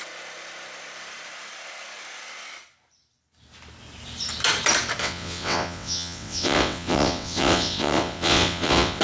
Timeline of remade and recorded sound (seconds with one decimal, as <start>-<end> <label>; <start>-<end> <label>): 0.0-5.0 recorded; 5.0-9.0 remade